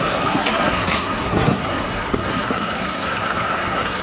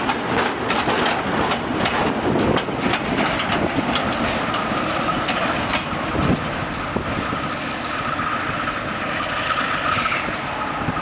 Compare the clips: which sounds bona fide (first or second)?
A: second